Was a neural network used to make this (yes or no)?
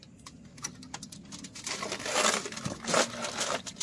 no